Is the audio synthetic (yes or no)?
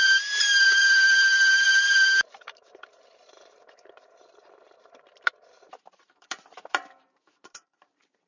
yes